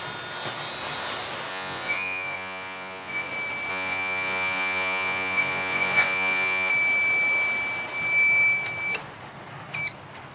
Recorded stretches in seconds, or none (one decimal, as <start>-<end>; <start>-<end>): 0.0-1.5; 3.3-3.7; 6.7-10.3